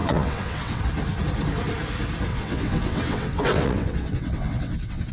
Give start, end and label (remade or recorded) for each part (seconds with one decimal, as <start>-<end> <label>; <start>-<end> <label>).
0.0-0.8 remade; 0.8-2.3 recorded; 2.3-5.1 remade

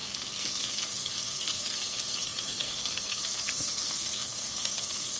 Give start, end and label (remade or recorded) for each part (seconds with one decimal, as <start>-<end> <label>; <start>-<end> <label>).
0.0-5.2 remade

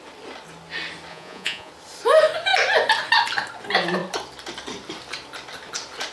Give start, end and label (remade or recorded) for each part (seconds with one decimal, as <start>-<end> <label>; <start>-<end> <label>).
0.0-1.1 recorded; 1.1-1.7 remade; 1.7-6.1 recorded

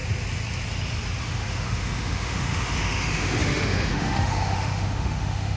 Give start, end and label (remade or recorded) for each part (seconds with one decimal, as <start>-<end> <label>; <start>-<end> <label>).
0.0-1.2 recorded; 1.2-5.6 remade

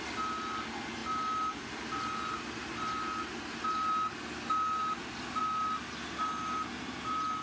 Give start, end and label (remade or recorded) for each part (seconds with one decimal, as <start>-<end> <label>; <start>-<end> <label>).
0.0-7.4 recorded

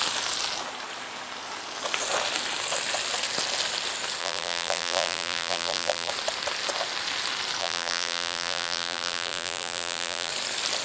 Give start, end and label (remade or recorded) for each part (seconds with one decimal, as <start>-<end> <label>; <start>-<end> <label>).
0.0-4.2 recorded; 4.2-6.1 remade; 6.1-7.6 recorded; 7.6-10.3 remade; 10.3-10.8 recorded